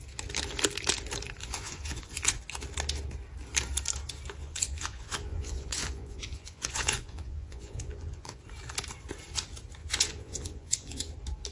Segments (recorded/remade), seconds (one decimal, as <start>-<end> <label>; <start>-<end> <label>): 0.0-1.4 recorded; 1.4-2.4 remade; 2.4-4.4 recorded; 4.4-8.4 remade; 8.4-9.8 recorded; 9.8-11.1 remade; 11.1-11.5 recorded